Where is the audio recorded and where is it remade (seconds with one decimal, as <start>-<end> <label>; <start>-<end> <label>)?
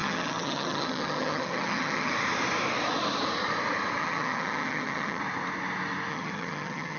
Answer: 0.0-2.1 remade; 2.1-4.0 recorded; 4.0-5.2 remade; 5.2-6.1 recorded; 6.1-7.0 remade